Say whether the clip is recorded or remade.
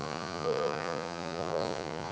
remade